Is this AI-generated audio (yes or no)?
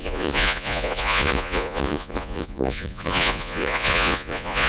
yes